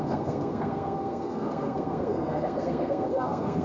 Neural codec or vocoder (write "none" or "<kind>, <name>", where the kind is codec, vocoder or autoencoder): codec, SNAC